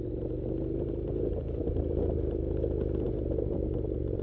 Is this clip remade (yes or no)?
no